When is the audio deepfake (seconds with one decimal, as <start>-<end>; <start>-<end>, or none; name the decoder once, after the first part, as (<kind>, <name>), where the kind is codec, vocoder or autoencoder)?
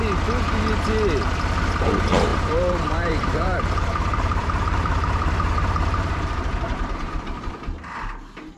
2.3-7.5 (vocoder, BigVGAN v2)